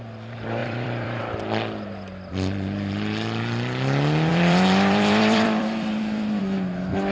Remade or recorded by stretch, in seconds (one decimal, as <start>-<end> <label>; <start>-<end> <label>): 0.0-0.6 recorded; 0.6-1.2 remade; 1.2-4.3 recorded; 4.3-6.4 remade; 6.4-7.1 recorded